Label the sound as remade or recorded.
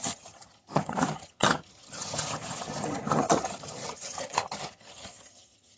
remade